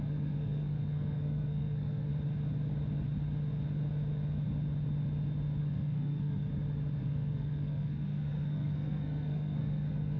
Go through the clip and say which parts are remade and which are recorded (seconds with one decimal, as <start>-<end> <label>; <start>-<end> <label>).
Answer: 0.0-2.1 remade; 2.1-5.6 recorded; 5.6-6.5 remade; 6.5-7.0 recorded; 7.0-10.2 remade